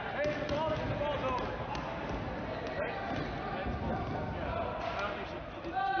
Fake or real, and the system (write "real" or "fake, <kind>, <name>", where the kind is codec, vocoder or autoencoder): real